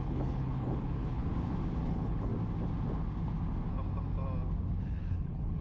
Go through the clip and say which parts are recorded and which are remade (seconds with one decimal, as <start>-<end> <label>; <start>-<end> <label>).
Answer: 0.0-1.3 remade; 1.3-1.9 recorded; 1.9-2.3 remade; 2.3-4.8 recorded; 4.8-5.6 remade